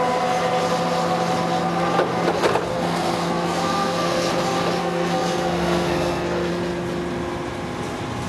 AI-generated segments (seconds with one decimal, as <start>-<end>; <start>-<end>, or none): 2.7-4.3; 4.8-6.5